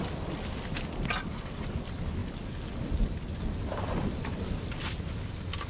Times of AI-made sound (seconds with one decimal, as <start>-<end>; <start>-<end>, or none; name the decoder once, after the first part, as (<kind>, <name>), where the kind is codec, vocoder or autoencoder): none